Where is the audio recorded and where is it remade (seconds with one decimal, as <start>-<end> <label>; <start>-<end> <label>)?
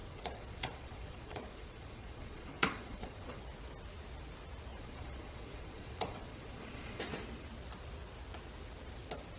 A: 0.0-3.4 remade; 3.4-4.7 recorded; 4.7-7.0 remade; 7.0-9.4 recorded